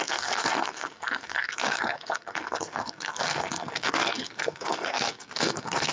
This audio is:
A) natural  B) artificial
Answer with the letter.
B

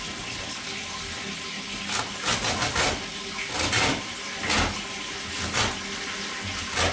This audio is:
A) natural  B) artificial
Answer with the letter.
A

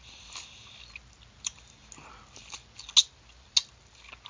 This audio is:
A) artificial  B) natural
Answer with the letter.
B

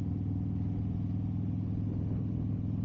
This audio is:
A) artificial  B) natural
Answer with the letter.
B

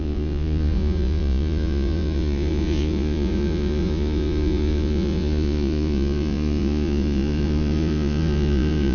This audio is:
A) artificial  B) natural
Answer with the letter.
A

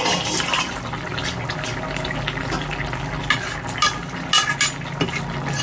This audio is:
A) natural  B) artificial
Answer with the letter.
A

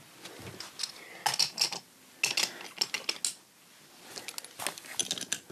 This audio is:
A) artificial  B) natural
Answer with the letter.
B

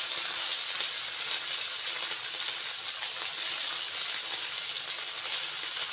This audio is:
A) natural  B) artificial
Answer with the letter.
A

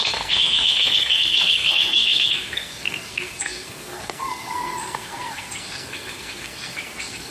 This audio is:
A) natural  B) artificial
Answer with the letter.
B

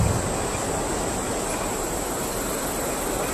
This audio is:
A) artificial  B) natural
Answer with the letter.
B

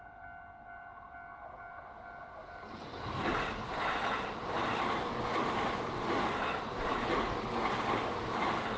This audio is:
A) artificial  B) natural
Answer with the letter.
B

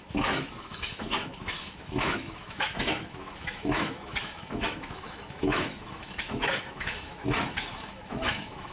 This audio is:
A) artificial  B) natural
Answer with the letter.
A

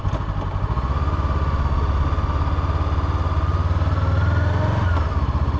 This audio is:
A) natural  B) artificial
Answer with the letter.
A